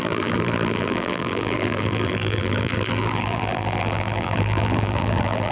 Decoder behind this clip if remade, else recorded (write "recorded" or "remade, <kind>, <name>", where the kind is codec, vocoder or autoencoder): remade, vocoder, BigVGAN v2